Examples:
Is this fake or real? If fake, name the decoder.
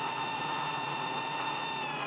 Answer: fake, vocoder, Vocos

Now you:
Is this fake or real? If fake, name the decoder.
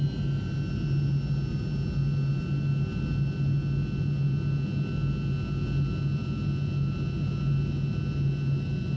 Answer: real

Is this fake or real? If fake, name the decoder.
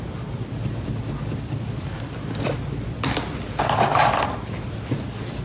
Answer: real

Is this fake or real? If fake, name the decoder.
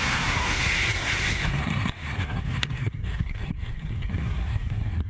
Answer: fake, codec, SNAC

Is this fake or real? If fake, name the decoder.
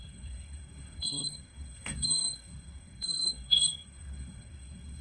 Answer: fake, codec, SNAC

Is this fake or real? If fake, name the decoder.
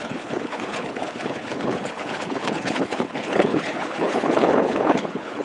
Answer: fake, codec, HILCodec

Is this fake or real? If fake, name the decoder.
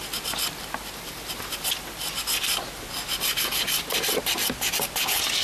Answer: real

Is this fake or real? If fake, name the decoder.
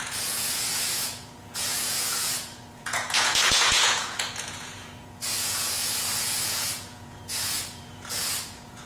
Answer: fake, vocoder, Vocos